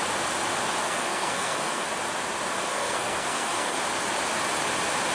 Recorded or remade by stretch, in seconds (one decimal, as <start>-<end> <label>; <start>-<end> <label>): 0.0-0.8 recorded; 0.8-1.9 remade; 1.9-2.7 recorded; 2.7-3.8 remade; 3.8-5.1 recorded